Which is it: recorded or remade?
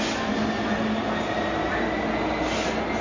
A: recorded